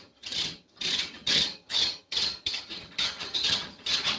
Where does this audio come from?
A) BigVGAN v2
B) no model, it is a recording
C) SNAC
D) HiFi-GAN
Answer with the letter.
D